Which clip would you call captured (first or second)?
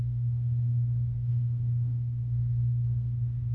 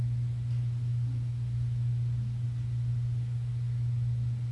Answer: second